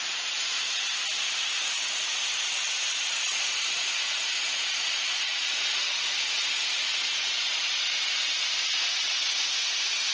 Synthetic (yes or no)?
yes